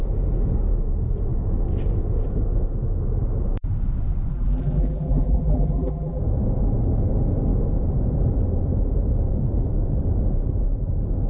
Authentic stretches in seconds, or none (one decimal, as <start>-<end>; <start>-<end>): 0.0-4.3; 6.2-11.3